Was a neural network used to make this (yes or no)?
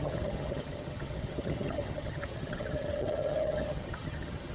yes